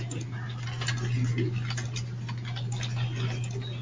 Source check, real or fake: real